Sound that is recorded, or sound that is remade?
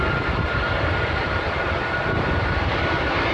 recorded